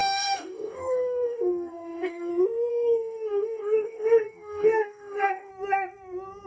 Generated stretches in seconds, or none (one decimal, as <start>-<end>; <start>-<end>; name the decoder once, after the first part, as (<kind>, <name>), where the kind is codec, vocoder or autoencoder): 0.0-2.3 (codec, DAC); 2.7-5.5